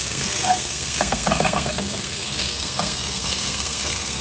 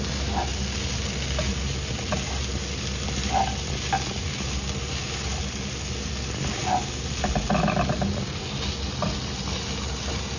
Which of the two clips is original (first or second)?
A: second